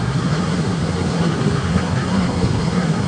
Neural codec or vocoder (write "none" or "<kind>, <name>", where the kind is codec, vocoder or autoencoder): codec, SNAC